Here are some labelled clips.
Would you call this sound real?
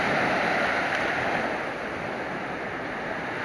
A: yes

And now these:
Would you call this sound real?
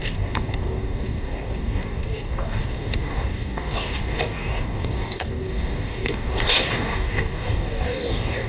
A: no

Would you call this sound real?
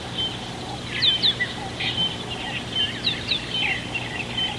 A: yes